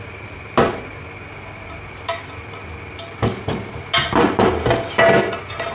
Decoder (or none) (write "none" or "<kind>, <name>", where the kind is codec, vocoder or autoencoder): none